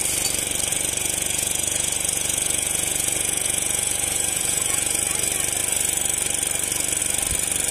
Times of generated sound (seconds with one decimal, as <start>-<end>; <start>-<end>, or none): 0.7-5.0